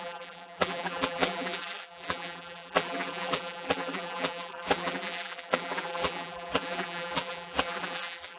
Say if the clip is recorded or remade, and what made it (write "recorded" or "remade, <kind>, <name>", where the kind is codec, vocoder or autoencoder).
remade, vocoder, BigVGAN v2